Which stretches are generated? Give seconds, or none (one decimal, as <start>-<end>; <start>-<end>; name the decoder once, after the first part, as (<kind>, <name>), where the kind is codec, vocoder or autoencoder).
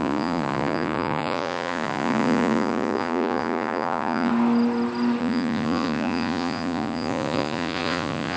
0.0-4.3 (vocoder, Vocos); 5.2-8.4